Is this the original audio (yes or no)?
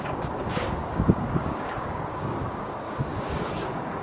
no